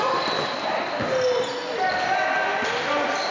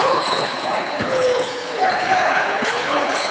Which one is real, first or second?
first